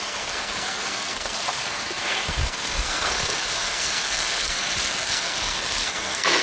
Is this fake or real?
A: fake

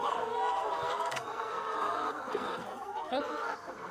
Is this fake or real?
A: fake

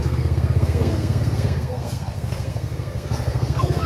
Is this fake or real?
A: fake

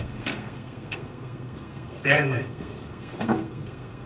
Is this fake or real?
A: fake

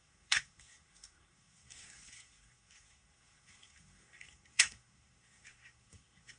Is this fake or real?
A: fake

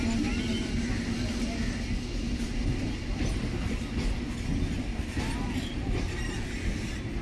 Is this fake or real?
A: real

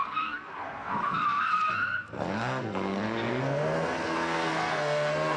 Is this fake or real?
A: fake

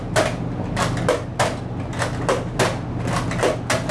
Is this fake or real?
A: real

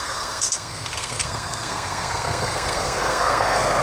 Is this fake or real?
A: fake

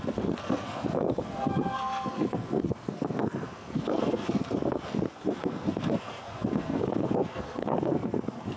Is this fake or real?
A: fake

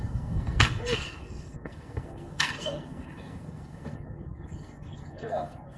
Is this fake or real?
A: fake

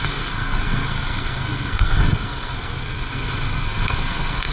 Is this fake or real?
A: fake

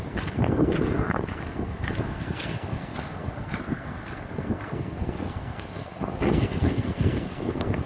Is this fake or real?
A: fake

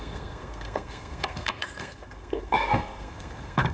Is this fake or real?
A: fake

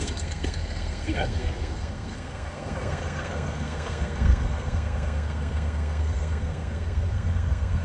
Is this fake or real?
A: fake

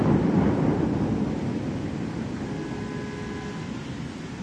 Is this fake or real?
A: real